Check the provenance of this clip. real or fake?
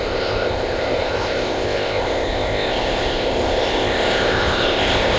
fake